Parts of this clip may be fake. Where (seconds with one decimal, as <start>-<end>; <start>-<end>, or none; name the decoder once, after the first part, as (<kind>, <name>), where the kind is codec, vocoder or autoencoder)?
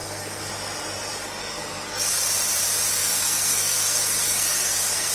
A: 0.0-0.5 (codec, SNAC); 1.4-2.1; 3.0-5.1